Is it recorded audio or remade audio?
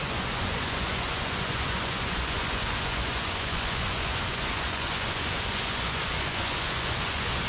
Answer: remade